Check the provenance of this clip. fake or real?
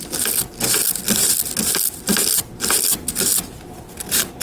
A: real